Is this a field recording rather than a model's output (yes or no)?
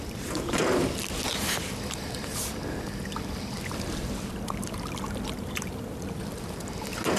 yes